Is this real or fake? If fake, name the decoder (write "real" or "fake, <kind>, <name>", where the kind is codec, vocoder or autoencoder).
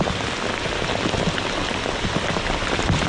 real